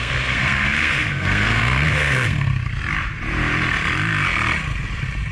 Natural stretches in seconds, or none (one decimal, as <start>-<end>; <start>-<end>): 2.5-5.3